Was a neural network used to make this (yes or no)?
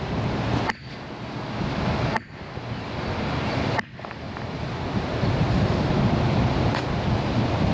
no